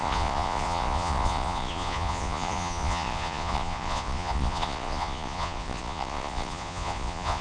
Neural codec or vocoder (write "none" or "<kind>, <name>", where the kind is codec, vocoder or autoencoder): vocoder, Vocos